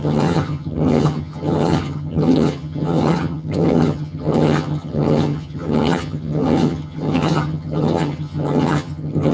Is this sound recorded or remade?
remade